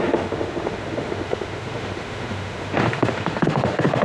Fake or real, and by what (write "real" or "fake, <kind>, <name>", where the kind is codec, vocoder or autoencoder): fake, autoencoder, DAC-VAE